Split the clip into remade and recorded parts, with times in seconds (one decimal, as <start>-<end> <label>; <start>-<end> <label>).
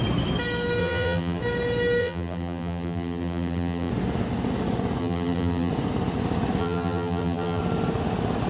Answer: 0.0-0.8 recorded; 0.8-1.4 remade; 1.4-2.0 recorded; 2.0-3.9 remade; 3.9-5.0 recorded; 5.0-5.7 remade; 5.7-6.6 recorded; 6.6-7.6 remade; 7.6-8.5 recorded